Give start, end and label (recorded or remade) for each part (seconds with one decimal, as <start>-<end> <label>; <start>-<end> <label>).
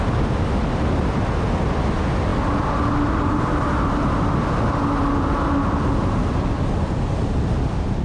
0.0-8.0 recorded